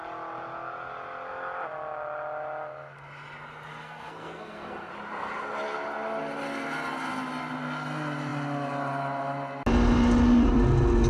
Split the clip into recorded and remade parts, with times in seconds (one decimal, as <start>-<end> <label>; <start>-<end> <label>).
0.0-3.7 recorded; 3.7-4.9 remade; 4.9-11.1 recorded